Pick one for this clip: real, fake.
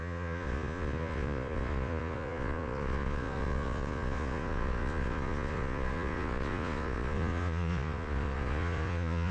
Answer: fake